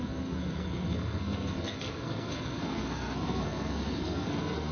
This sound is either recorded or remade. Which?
remade